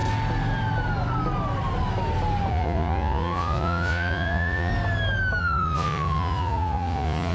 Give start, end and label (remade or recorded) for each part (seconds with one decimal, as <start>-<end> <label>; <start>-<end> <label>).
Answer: 0.0-2.5 recorded; 2.5-4.7 remade; 4.7-5.4 recorded; 5.4-7.3 remade